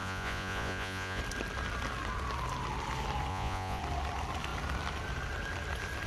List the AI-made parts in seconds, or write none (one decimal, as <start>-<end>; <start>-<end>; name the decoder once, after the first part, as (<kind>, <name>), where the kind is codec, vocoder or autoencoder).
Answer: 0.0-1.2 (vocoder, Vocos); 3.3-3.8